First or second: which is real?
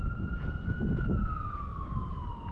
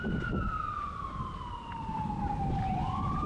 first